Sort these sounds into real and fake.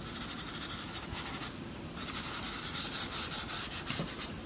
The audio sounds real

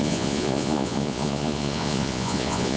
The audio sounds fake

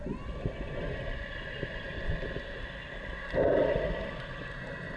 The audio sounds real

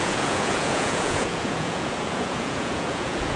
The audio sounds fake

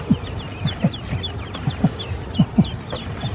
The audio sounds real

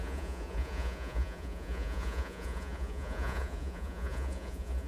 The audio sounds fake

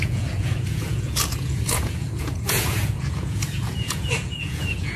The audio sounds fake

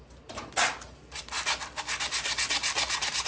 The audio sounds real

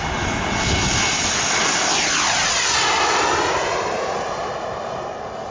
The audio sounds real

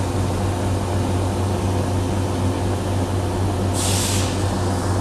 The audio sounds real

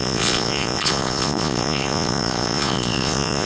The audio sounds fake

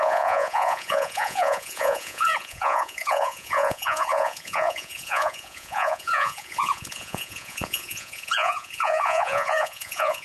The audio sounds fake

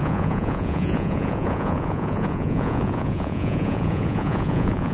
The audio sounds fake